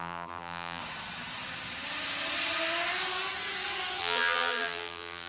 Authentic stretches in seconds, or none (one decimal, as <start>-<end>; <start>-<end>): 0.8-4.0